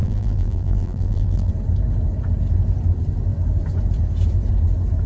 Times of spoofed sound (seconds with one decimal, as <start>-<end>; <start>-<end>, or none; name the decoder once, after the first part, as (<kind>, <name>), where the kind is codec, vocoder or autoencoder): 0.0-1.5 (vocoder, BigVGAN v2)